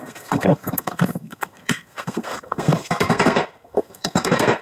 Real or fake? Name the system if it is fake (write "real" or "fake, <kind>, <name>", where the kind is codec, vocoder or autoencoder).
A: fake, codec, SNAC